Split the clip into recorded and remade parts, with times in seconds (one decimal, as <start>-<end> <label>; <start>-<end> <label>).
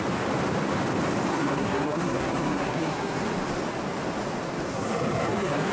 0.0-1.3 recorded; 1.3-3.3 remade; 3.3-4.7 recorded; 4.7-5.7 remade